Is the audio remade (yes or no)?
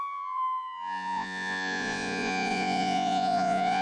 yes